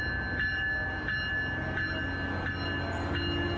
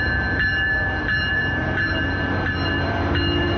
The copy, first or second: second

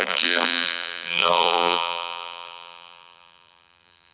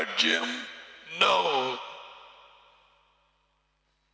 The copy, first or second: first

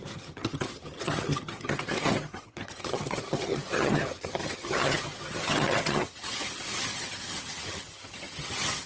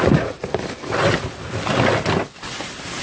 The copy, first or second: first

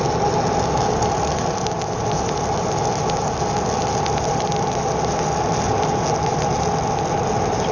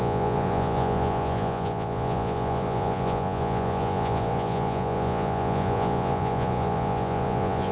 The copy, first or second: second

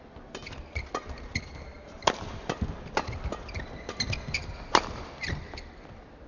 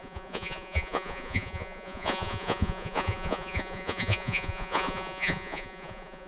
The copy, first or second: second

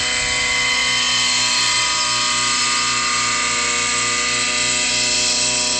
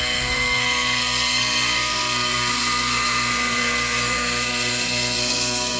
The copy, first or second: second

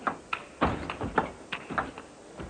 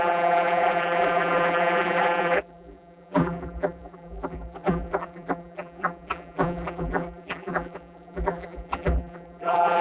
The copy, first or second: second